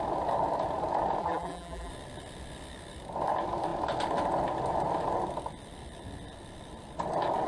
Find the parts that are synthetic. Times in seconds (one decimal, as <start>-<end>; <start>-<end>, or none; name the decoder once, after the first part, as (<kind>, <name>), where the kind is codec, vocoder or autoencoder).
1.2-1.9 (vocoder, BigVGAN v2)